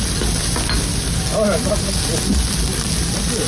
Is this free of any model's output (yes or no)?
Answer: yes